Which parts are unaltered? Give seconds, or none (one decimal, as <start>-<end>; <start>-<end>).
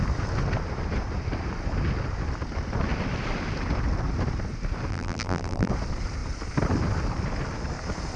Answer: 0.0-4.9; 5.7-8.2